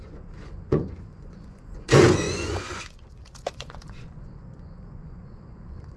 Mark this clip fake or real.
fake